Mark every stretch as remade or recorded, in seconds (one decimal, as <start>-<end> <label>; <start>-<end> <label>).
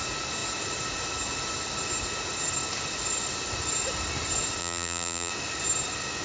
0.0-4.6 recorded; 4.6-5.3 remade; 5.3-6.2 recorded